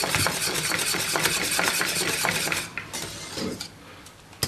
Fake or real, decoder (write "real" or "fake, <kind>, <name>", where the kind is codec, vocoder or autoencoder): real